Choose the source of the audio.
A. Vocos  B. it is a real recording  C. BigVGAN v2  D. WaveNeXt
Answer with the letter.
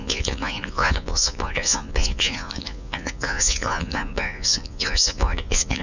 A